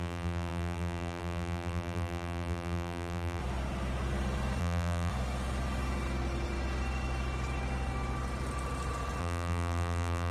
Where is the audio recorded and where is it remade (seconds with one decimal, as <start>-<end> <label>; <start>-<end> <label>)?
0.0-3.4 remade; 3.4-4.6 recorded; 4.6-5.1 remade; 5.1-9.2 recorded; 9.2-10.3 remade